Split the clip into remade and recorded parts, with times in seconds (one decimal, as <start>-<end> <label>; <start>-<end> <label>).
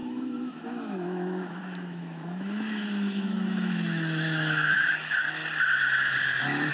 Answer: 0.0-5.4 remade; 5.4-6.7 recorded